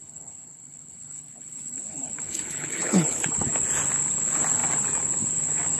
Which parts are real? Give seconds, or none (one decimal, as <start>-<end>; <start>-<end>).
3.5-5.8